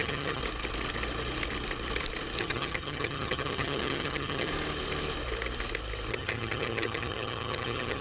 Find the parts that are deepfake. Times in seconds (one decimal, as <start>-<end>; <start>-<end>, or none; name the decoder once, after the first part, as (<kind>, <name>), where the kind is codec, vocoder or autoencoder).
0.0-0.4 (vocoder, HiFi-GAN); 2.4-4.5; 6.1-8.0